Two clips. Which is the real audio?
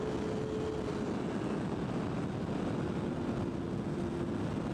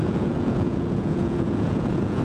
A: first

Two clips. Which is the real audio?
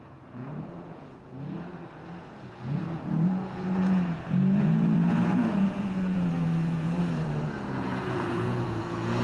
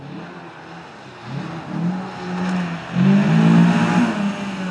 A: second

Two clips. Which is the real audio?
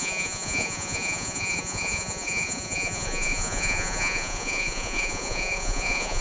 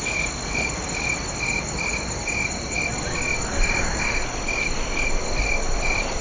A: second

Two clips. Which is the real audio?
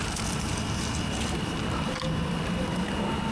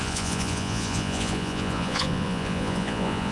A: first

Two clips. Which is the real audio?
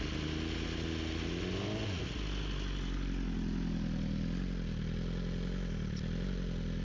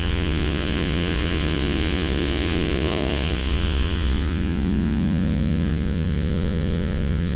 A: first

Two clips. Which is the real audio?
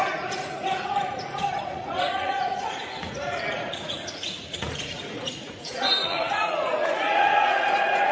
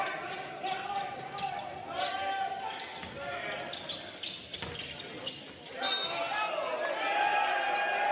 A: second